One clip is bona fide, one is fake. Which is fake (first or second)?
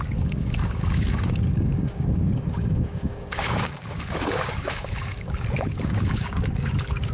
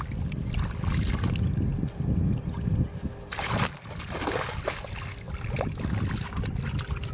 first